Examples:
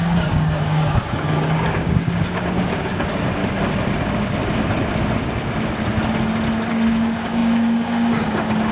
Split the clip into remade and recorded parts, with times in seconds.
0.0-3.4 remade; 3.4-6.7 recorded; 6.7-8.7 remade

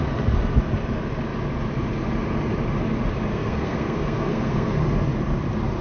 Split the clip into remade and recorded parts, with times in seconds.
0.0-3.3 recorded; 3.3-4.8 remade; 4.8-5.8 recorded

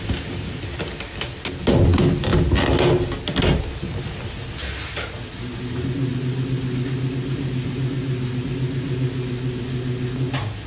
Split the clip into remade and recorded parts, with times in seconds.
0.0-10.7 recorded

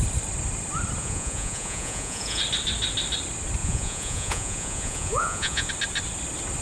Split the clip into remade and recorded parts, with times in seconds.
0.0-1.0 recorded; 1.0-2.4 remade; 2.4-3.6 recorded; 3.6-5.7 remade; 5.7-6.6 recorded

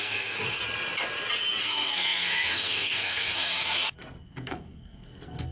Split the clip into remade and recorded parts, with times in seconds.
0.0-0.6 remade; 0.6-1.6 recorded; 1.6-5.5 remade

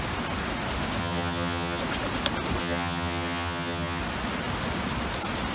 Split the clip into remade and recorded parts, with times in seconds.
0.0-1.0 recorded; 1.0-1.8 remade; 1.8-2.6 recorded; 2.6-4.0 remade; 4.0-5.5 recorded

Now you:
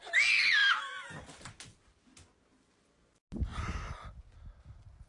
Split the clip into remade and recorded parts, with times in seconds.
0.0-5.1 recorded